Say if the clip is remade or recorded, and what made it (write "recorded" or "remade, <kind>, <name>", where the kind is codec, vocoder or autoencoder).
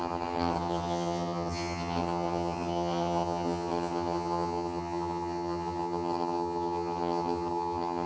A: remade, vocoder, HiFi-GAN